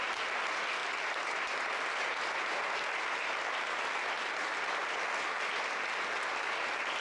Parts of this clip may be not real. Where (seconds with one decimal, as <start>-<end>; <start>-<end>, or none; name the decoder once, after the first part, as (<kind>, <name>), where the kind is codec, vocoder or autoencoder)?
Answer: none